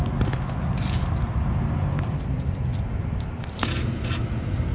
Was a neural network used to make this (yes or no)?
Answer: no